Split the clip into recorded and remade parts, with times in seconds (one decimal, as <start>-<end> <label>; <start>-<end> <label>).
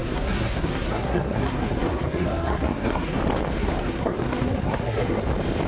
0.0-3.2 remade; 3.2-3.6 recorded; 3.6-5.2 remade; 5.2-5.7 recorded